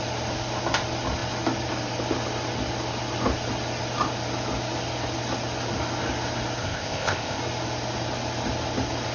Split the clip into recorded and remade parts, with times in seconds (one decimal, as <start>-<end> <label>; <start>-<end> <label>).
0.0-6.6 recorded; 6.6-7.4 remade; 7.4-9.1 recorded